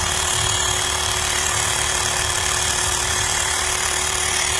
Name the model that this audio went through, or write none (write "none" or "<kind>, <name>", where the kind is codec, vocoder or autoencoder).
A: vocoder, BigVGAN v2